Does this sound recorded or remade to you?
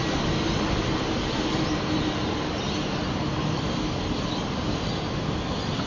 recorded